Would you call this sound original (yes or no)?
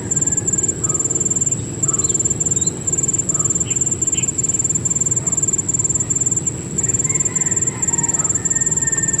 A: yes